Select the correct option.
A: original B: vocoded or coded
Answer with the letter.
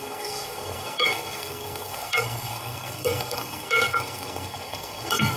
B